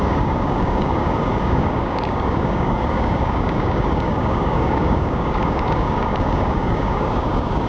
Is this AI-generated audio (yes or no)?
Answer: yes